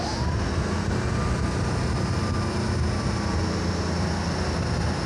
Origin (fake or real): real